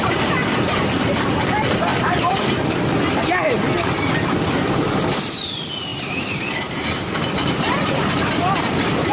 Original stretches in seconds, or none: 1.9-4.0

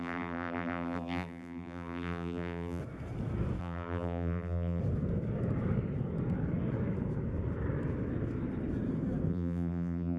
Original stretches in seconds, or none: 2.8-3.6; 4.8-9.3